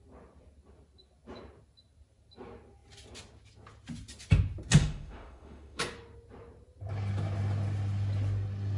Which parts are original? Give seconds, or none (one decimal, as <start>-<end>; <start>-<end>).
0.0-4.8; 5.8-8.8